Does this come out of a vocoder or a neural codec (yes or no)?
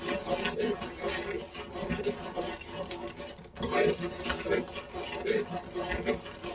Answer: no